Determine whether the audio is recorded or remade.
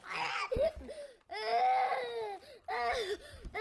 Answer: recorded